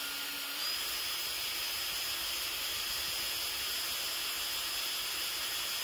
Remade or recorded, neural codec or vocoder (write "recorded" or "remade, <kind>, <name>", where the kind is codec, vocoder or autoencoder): recorded